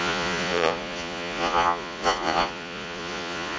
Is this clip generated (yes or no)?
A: yes